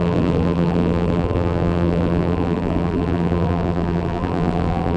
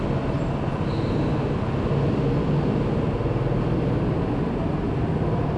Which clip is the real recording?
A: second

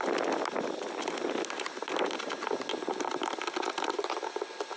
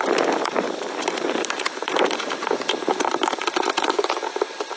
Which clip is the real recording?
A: first